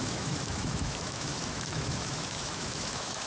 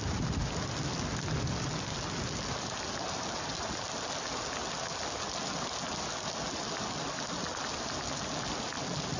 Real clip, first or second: second